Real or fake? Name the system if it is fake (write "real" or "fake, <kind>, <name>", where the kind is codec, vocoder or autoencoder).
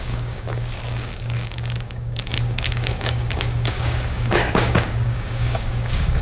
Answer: fake, codec, DAC